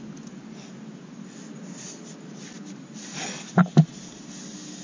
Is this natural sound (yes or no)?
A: yes